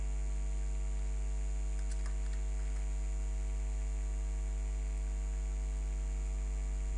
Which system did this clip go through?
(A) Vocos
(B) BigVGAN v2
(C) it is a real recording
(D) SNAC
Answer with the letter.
C